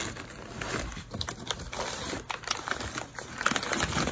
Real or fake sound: real